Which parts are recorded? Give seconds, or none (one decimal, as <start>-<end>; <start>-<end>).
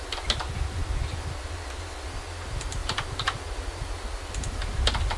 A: 0.0-5.2